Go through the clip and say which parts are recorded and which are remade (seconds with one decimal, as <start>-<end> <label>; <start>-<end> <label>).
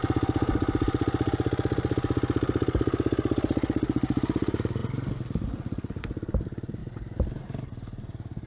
0.0-6.8 recorded; 6.8-8.5 remade